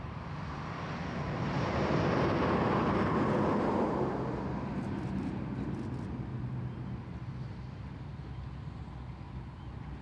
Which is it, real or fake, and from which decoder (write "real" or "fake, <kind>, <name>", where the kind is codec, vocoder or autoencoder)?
real